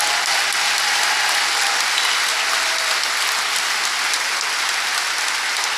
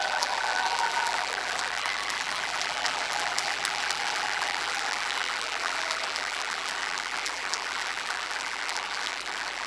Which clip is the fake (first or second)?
second